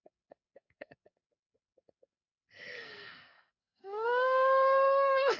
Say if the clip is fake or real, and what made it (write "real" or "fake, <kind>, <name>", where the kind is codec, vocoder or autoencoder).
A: fake, codec, SNAC